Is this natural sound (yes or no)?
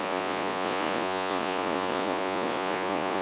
no